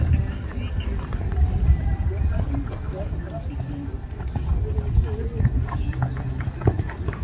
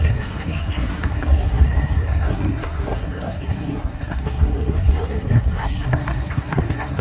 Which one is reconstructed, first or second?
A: second